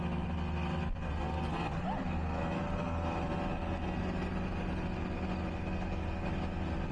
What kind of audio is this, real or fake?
real